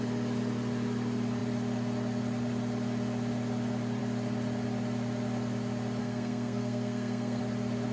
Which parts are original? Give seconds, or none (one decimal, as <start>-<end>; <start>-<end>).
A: 0.0-6.0; 7.4-7.9

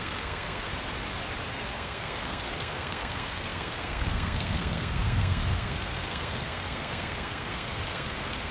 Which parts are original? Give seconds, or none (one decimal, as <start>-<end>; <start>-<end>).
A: 0.7-1.5

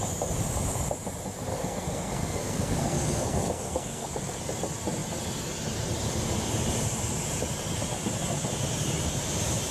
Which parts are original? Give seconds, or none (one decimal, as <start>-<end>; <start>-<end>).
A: 0.0-1.5; 4.4-9.7

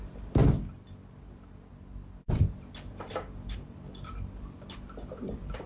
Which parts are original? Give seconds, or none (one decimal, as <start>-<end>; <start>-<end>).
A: 0.0-5.7

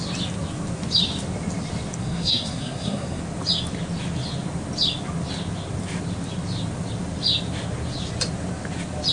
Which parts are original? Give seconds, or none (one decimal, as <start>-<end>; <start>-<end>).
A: 0.0-2.0; 3.2-9.1

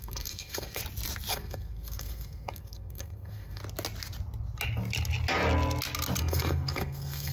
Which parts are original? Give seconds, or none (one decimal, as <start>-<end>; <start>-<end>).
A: 0.8-1.3; 3.6-6.2

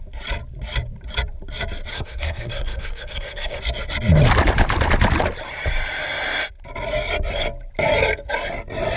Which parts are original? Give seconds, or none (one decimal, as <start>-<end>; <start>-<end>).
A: 0.0-1.9; 3.6-9.0

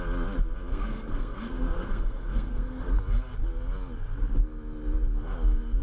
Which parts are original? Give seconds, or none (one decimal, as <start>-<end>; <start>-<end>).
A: 0.0-0.7; 2.9-5.8